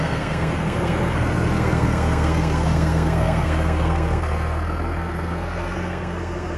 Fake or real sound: fake